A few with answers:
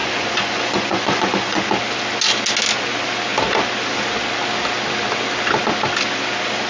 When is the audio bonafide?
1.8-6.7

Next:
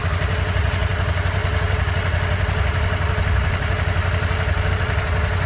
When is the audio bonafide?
0.0-5.5

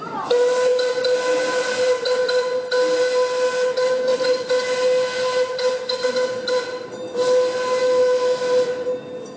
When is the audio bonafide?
0.0-7.8; 8.4-9.4

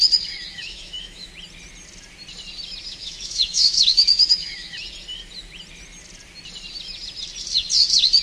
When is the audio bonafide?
0.0-0.5; 1.3-2.9; 4.7-8.2